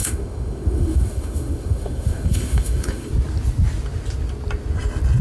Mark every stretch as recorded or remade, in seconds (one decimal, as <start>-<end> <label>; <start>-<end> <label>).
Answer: 0.0-3.1 remade; 3.1-5.2 recorded